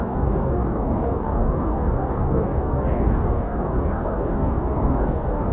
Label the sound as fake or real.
fake